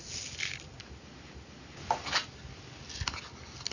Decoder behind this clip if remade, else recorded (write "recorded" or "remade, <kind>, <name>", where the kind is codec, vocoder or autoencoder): recorded